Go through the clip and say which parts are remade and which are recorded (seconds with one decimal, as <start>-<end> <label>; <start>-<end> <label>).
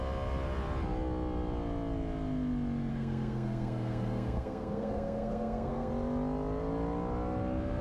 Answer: 0.0-2.9 recorded; 2.9-5.9 remade; 5.9-7.8 recorded